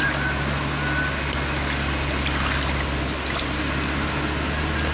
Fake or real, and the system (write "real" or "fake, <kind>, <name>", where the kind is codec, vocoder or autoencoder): real